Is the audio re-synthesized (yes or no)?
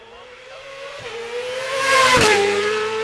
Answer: yes